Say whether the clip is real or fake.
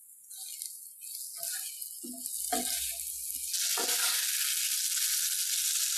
real